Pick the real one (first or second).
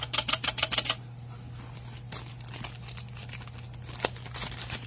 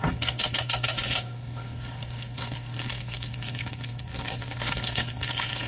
first